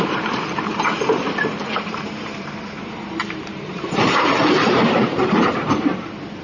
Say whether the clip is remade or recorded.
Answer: remade